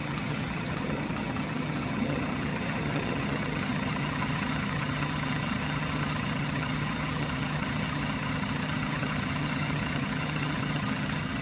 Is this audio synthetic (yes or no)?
yes